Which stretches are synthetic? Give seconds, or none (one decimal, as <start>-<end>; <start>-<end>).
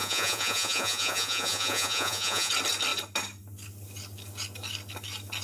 0.0-2.5